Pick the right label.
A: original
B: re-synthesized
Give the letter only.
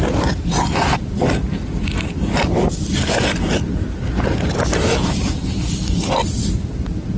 A